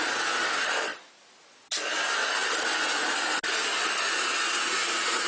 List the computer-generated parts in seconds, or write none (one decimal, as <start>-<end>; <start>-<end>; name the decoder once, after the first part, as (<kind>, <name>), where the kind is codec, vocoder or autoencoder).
none

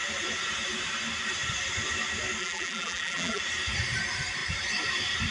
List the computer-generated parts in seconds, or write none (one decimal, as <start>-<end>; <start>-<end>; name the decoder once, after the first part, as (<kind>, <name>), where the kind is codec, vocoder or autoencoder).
2.4-3.4 (vocoder, BigVGAN v2)